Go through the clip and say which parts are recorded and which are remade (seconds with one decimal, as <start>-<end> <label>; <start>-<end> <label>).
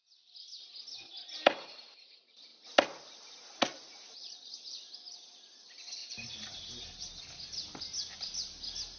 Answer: 0.0-4.2 recorded; 4.2-4.8 remade; 4.8-6.0 recorded; 6.0-7.1 remade; 7.1-9.0 recorded